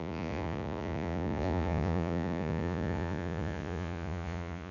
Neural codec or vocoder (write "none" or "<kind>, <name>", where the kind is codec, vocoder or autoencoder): vocoder, Vocos